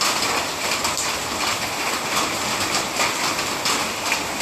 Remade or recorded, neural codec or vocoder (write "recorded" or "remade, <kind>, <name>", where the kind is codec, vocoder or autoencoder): recorded